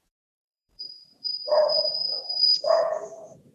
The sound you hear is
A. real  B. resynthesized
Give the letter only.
B